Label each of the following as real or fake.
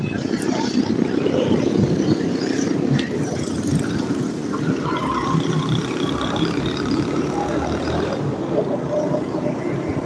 fake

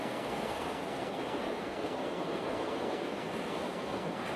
fake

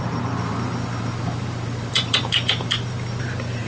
fake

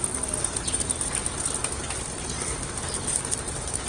real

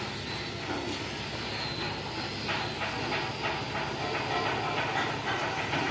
real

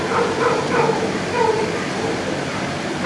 fake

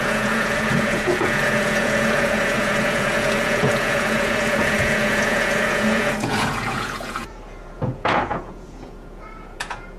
fake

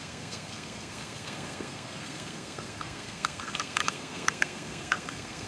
fake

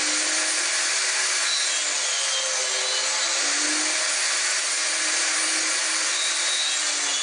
real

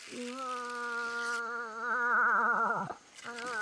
real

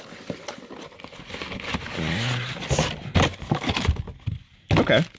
real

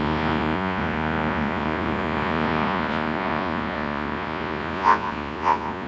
fake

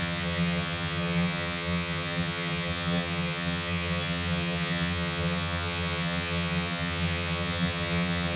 fake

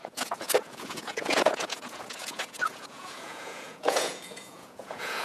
fake